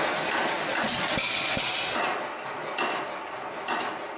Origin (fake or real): real